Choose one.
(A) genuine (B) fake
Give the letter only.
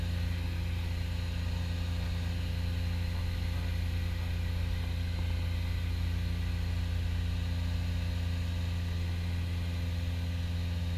A